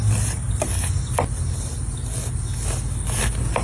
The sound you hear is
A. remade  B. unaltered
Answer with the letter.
B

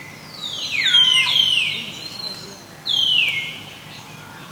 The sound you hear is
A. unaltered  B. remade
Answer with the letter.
B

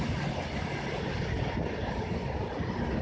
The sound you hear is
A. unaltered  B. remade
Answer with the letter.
A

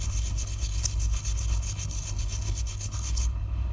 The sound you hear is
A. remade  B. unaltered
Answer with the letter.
A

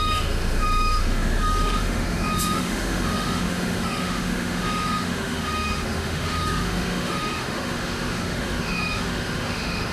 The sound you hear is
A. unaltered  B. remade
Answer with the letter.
B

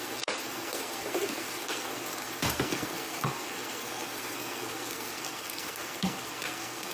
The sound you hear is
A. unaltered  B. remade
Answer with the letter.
B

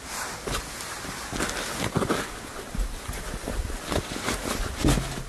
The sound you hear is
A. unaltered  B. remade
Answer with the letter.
A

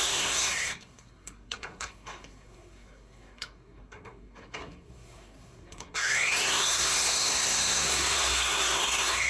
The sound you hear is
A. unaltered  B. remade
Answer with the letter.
B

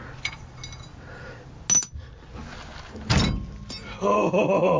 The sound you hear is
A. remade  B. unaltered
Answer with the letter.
B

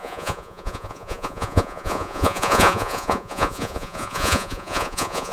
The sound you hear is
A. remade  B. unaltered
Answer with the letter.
A